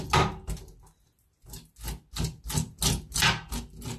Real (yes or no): yes